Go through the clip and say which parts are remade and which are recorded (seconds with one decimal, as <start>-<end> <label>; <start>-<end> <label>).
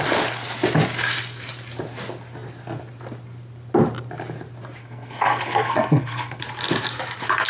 0.0-4.8 recorded; 4.8-6.4 remade; 6.4-7.5 recorded